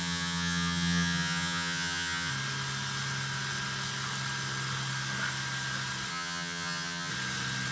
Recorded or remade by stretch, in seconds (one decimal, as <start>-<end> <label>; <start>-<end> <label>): 0.0-2.3 remade; 2.3-6.1 recorded; 6.1-7.1 remade; 7.1-7.7 recorded